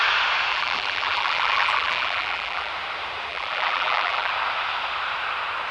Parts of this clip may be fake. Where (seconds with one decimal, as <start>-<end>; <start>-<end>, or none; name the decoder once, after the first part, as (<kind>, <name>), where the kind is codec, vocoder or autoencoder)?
0.5-2.7 (vocoder, BigVGAN v2); 3.3-4.3